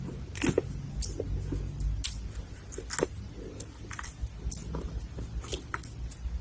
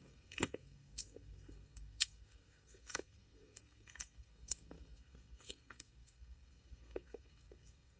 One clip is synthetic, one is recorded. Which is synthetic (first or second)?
second